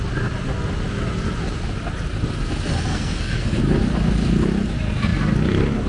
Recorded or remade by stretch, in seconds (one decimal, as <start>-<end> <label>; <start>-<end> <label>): 0.0-2.9 recorded; 2.9-3.6 remade; 3.6-5.9 recorded

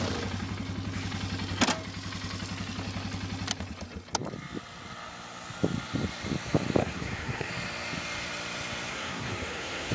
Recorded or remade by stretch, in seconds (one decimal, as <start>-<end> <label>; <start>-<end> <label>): 0.0-6.8 recorded; 6.8-7.5 remade; 7.5-8.9 recorded; 8.9-9.9 remade